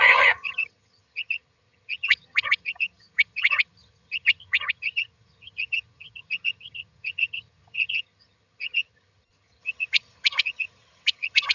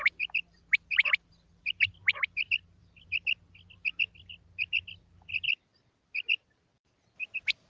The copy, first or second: first